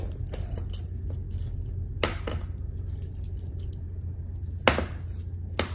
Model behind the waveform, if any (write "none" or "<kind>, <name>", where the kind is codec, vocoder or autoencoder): none